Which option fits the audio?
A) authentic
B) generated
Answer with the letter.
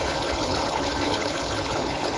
B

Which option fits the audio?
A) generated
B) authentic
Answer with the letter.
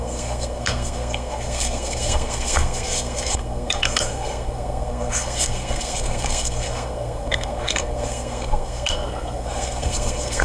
A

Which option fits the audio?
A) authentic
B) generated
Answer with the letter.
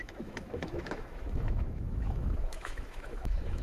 B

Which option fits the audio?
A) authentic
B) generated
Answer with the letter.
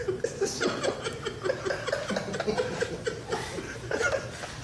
A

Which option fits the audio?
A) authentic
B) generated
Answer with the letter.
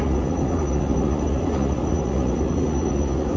B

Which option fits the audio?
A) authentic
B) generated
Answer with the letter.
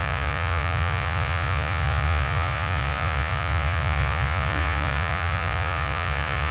B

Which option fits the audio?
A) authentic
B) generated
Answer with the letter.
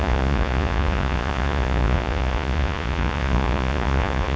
B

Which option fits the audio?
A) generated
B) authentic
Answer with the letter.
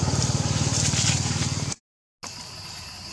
B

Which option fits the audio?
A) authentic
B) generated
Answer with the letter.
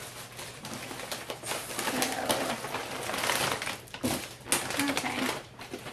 A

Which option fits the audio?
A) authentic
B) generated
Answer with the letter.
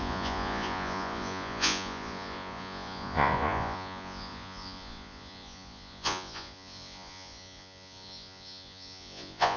B